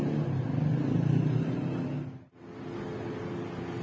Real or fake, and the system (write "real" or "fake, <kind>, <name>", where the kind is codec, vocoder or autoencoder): real